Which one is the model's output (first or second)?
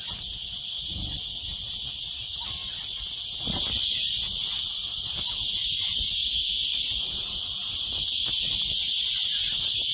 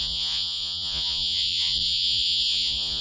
second